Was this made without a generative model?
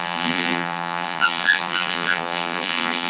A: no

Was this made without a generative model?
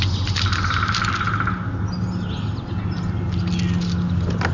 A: yes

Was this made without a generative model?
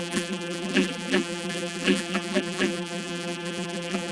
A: no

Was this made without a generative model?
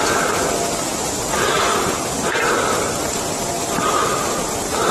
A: yes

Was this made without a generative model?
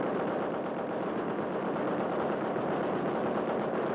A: yes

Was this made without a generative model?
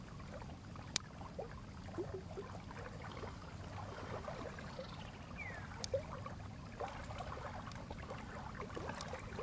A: yes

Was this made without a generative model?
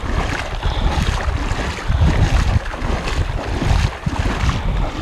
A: yes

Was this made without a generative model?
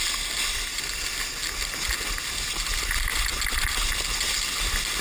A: yes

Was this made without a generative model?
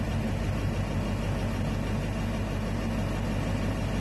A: yes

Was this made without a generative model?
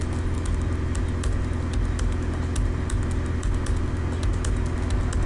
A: yes